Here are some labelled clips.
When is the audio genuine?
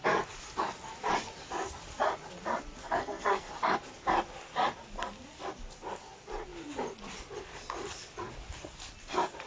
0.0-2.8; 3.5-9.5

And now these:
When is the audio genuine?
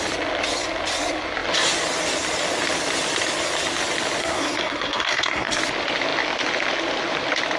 0.0-4.2; 5.6-7.6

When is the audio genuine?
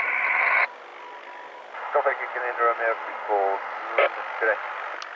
0.0-5.2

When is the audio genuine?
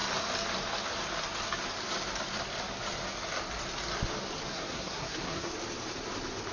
0.0-4.5; 5.5-6.5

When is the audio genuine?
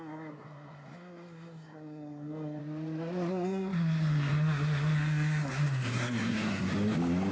2.6-3.3; 6.7-7.3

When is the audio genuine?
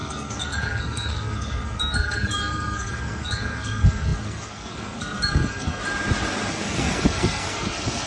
5.8-6.5